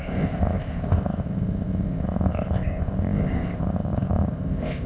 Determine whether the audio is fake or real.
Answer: fake